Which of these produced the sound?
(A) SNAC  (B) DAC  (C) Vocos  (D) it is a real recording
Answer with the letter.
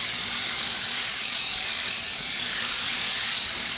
B